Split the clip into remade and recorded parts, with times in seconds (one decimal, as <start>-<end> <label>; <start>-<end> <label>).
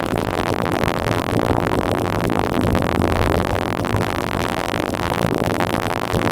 0.0-6.3 remade